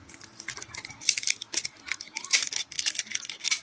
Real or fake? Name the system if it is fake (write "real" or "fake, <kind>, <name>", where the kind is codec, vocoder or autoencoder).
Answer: real